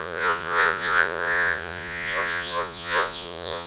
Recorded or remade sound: remade